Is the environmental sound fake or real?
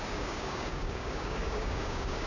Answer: fake